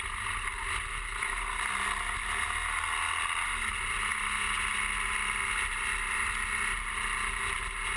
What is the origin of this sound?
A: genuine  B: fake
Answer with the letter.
A